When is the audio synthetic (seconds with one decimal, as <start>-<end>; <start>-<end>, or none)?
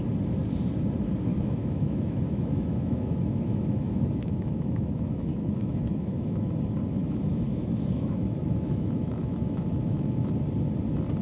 1.3-6.4; 7.0-10.3